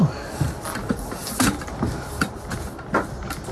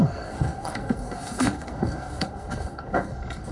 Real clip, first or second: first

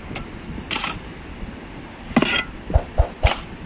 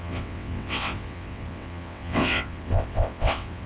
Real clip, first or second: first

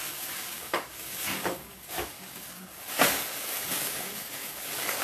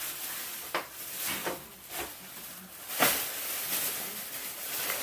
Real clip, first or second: second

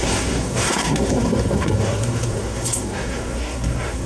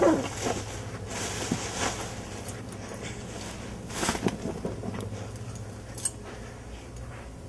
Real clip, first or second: second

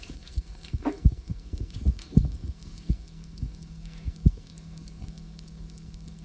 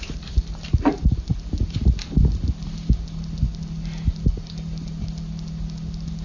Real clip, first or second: second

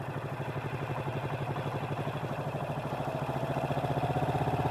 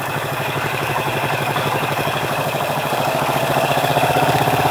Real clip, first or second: first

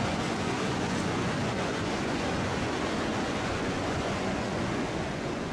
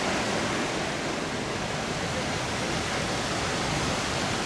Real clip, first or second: second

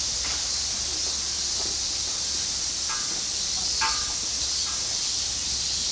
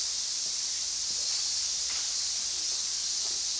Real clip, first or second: first